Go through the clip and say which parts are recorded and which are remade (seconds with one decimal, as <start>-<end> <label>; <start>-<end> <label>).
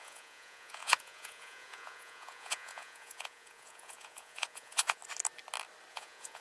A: 0.0-5.0 remade; 5.0-5.9 recorded; 5.9-6.4 remade